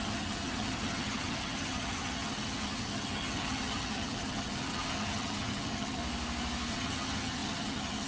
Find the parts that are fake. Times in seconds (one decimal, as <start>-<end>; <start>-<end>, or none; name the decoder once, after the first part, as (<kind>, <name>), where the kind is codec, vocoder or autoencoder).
0.0-6.0 (vocoder, HiFi-GAN); 6.7-8.1